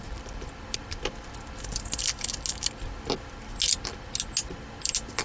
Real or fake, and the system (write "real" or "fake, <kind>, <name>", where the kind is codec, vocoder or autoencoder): real